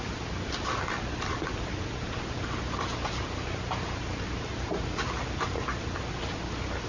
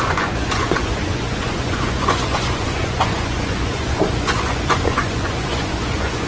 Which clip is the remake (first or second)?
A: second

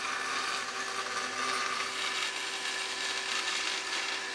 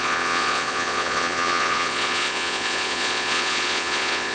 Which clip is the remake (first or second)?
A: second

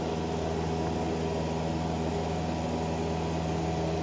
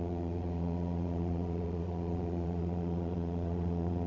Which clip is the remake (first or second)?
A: second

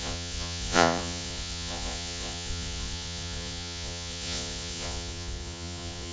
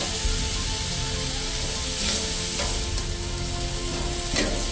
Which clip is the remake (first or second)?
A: first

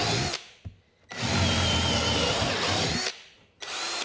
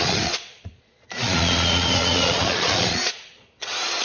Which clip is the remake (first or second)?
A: second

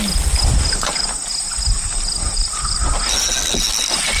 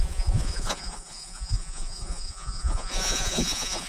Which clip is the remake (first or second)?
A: second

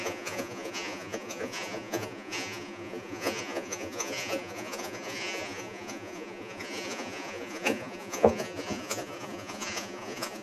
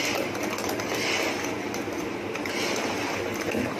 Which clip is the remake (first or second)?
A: first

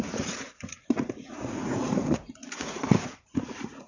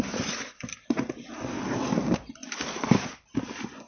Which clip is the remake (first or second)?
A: first